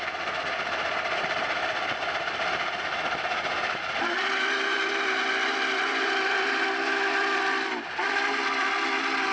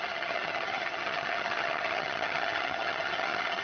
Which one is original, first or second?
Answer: first